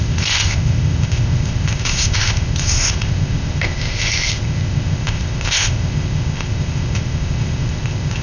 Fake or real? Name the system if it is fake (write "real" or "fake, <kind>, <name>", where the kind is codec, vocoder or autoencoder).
fake, codec, ZipCodec